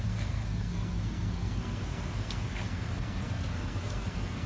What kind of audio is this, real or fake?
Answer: fake